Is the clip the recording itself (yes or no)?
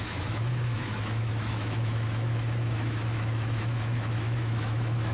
no